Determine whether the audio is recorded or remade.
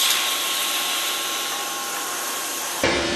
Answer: remade